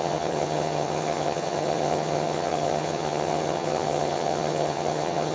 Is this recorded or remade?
remade